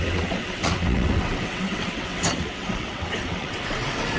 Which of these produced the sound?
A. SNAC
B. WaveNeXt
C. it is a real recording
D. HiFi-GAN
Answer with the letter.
B